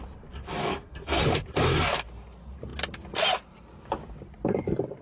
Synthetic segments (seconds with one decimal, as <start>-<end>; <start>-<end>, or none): 0.6-1.2